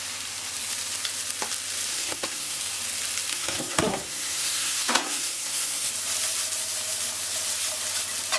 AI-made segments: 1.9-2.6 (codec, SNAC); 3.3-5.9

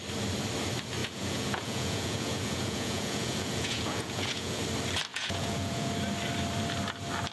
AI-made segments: 1.0-4.6 (vocoder, Vocos); 5.1-5.9